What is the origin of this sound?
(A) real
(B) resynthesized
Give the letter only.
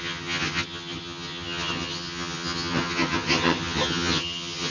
B